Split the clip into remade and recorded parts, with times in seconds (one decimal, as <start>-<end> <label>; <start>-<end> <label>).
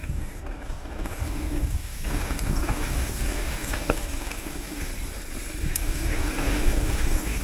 0.0-4.9 remade; 4.9-5.6 recorded; 5.6-7.4 remade